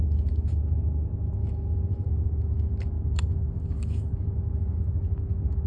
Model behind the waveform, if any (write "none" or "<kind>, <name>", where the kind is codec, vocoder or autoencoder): autoencoder, DAC-VAE